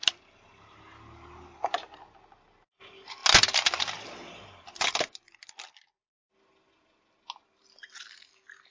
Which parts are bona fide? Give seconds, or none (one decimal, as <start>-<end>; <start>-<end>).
0.0-8.7